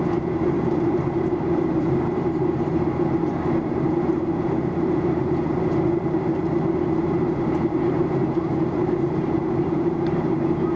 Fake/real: fake